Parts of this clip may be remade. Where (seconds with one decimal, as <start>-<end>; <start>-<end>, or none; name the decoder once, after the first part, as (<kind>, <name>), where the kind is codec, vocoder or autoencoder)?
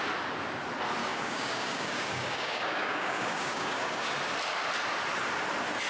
1.1-4.1 (codec, DAC)